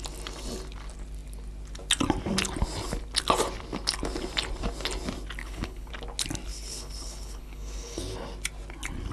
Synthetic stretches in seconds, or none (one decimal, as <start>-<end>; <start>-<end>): 5.4-5.9; 6.5-8.0